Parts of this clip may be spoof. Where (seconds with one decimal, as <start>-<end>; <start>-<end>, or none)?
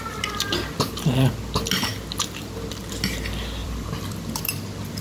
3.6-4.5